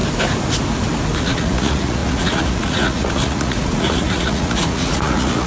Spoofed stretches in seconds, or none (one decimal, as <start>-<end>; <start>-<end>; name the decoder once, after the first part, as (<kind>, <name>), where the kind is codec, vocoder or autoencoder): 1.2-5.5 (vocoder, Vocos)